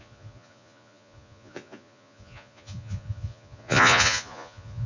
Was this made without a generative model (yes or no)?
no